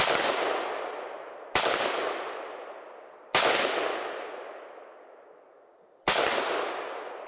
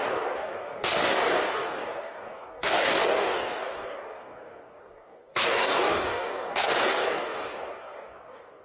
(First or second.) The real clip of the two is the first